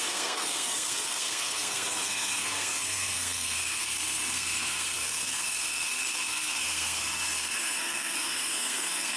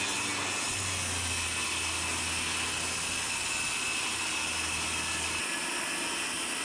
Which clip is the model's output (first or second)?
first